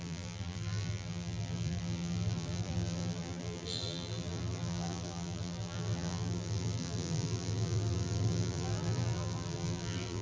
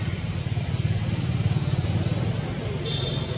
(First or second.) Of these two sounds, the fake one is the first